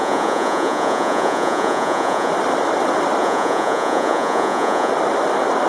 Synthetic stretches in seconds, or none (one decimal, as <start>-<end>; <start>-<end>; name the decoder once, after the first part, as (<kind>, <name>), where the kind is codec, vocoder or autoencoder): 0.0-2.3 (vocoder, Vocos); 3.2-4.9